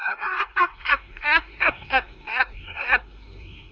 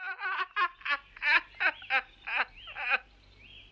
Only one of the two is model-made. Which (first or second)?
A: first